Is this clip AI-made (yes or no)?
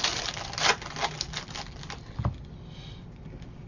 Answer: no